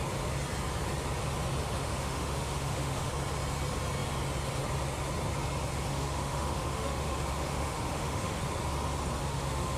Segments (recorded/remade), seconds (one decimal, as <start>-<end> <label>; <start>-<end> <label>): 0.0-1.6 recorded; 1.6-3.1 remade; 3.1-5.9 recorded; 5.9-8.4 remade; 8.4-9.2 recorded; 9.2-9.8 remade